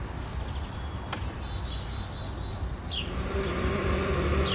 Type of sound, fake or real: real